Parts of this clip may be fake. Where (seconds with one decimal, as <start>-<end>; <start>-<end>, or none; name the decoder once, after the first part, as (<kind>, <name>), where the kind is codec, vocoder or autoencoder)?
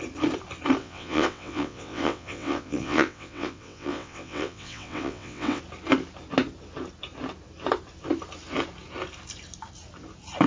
0.8-5.6 (vocoder, WaveNeXt)